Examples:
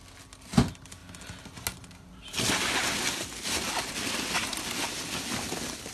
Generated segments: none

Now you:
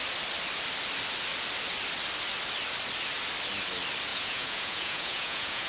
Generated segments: 4.1-5.7